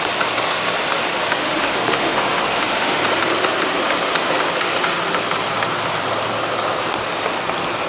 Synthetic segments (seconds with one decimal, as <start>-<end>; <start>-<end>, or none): 1.4-3.0